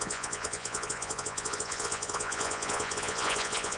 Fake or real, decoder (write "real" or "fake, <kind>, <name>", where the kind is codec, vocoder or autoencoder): fake, vocoder, Vocos